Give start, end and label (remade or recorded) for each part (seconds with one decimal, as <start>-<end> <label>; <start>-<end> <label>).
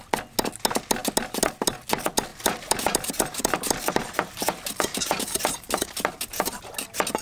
0.0-2.3 recorded; 2.3-6.6 remade; 6.6-7.2 recorded